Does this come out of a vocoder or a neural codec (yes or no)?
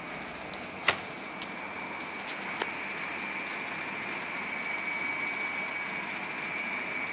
no